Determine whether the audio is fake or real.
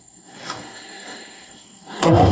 fake